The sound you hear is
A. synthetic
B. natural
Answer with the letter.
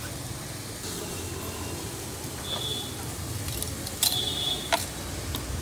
B